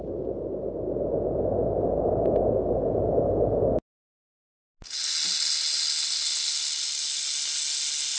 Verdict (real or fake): real